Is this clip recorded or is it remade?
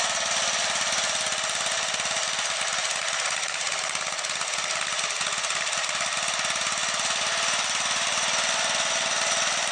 recorded